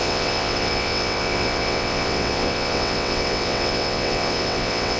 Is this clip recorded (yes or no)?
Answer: no